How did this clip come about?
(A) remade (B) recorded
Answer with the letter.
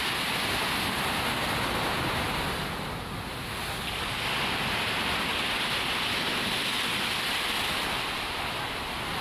B